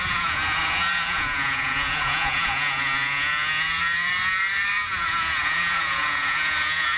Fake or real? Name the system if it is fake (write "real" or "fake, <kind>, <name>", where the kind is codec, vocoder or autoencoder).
fake, vocoder, Vocos